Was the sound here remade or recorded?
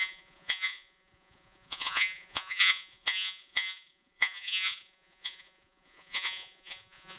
remade